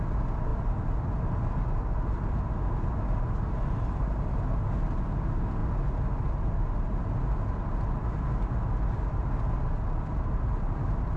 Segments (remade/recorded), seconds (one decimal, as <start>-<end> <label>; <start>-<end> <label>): 0.0-11.2 recorded

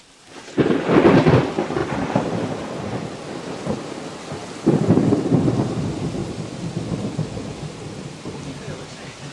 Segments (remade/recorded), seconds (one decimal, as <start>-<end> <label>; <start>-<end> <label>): 0.0-1.8 recorded; 1.8-3.7 remade; 3.7-9.3 recorded

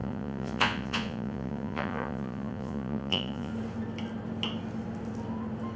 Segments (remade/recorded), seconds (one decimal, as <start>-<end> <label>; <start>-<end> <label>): 0.0-3.5 remade; 3.5-5.8 recorded

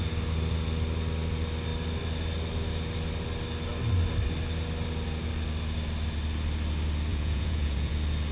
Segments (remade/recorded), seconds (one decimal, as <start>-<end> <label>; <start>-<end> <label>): 0.0-7.1 recorded; 7.1-7.9 remade; 7.9-8.3 recorded